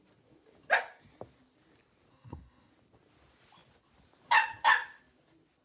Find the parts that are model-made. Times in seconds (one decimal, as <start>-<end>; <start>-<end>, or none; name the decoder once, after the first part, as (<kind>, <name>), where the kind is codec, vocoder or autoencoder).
2.1-2.7 (codec, SNAC)